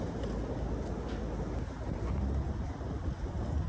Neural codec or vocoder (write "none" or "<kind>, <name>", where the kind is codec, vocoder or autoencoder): none